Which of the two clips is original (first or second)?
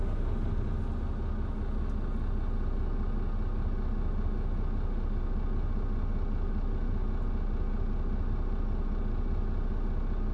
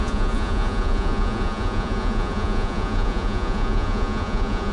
first